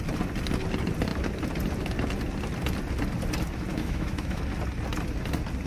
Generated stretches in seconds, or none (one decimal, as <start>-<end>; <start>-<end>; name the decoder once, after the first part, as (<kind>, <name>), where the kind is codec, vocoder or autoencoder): 3.7-4.4 (autoencoder, DAC-VAE)